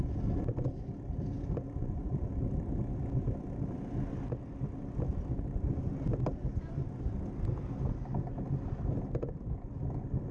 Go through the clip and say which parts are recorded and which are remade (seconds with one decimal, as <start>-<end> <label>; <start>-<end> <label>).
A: 0.0-1.8 recorded; 1.8-2.3 remade; 2.3-10.3 recorded